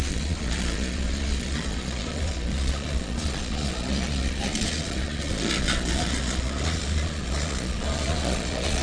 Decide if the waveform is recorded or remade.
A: remade